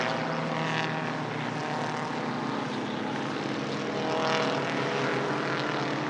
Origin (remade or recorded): recorded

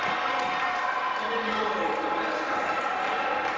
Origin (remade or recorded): recorded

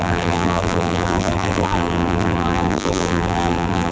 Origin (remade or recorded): remade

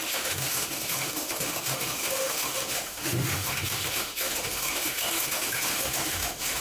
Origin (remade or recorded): remade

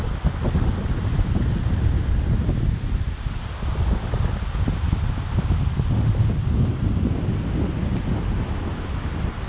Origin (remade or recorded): recorded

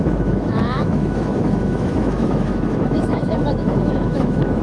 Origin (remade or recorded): remade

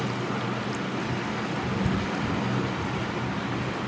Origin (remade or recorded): recorded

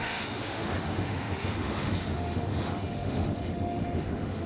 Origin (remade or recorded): remade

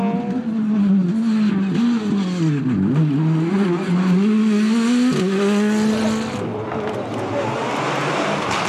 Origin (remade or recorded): recorded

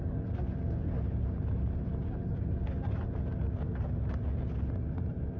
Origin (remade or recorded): recorded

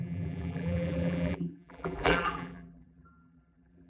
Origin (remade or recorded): remade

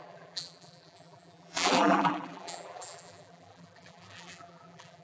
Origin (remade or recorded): remade